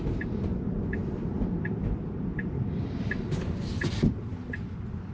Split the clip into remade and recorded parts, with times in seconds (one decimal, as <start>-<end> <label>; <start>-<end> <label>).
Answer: 0.0-1.0 remade; 1.0-1.6 recorded; 1.6-5.1 remade